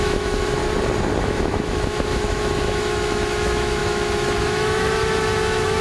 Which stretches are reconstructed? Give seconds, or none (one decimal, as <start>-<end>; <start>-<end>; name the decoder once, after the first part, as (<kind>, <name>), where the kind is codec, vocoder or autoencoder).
0.0-0.6 (autoencoder, DAC-VAE); 1.2-5.8